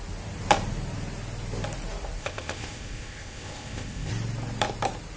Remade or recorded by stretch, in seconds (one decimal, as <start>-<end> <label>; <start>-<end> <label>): 0.0-2.2 recorded; 2.2-4.1 remade; 4.1-5.2 recorded